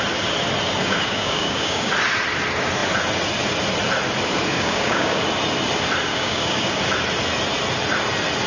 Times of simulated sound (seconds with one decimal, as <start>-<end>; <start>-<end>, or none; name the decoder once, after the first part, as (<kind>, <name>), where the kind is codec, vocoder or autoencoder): 0.8-1.9 (codec, DAC); 4.5-5.2; 6.1-6.8